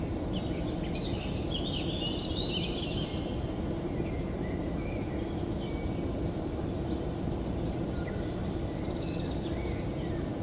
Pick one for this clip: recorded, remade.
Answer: recorded